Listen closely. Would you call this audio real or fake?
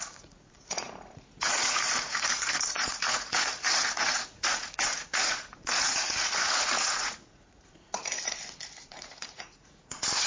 fake